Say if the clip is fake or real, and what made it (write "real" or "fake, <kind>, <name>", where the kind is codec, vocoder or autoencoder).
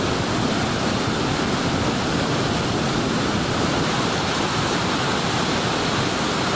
fake, vocoder, BigVGAN v2